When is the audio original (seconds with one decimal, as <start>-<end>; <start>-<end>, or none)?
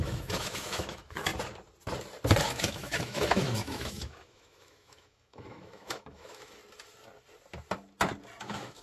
1.3-2.4; 6.6-8.4